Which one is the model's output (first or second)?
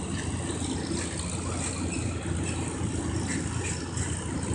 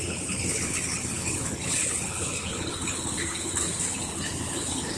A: second